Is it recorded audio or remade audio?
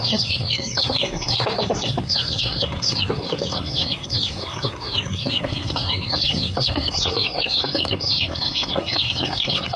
remade